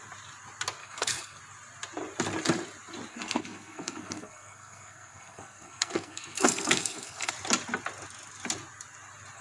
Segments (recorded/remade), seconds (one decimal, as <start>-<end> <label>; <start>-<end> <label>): 0.0-0.8 recorded; 0.8-1.4 remade; 1.4-3.1 recorded; 3.1-7.3 remade; 7.3-9.4 recorded